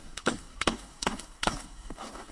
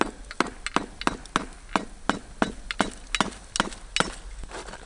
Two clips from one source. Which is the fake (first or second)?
first